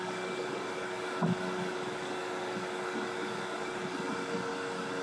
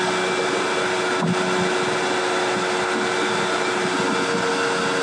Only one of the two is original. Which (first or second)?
second